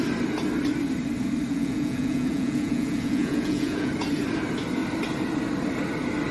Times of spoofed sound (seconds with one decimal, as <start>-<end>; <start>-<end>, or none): 1.5-3.9